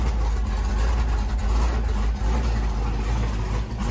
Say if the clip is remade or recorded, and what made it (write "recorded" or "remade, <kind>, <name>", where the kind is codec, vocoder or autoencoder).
recorded